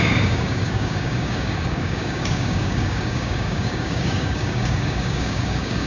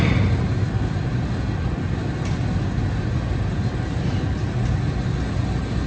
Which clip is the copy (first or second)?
first